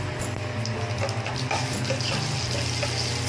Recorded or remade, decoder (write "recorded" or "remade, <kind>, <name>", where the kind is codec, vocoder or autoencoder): recorded